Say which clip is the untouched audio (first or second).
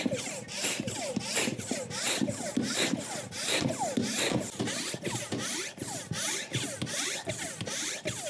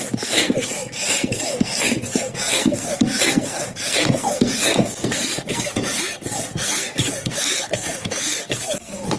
first